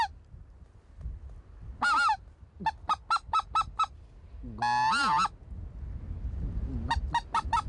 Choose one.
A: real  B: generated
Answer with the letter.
A